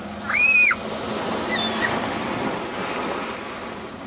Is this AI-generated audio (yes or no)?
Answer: no